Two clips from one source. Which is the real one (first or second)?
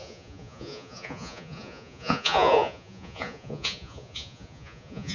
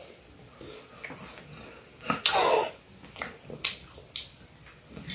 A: second